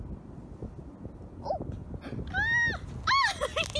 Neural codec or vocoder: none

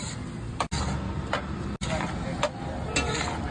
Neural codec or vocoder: none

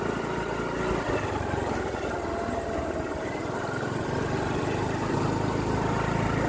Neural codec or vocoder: none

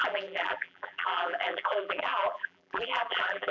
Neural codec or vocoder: vocoder, BigVGAN v2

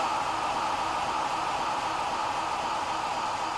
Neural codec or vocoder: none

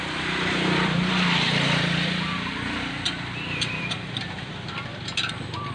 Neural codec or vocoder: vocoder, BigVGAN v2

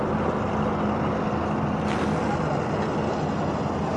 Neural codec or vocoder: none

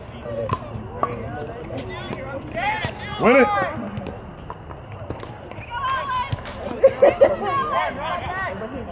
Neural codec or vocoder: none